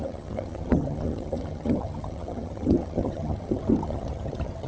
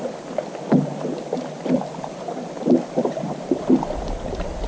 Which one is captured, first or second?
second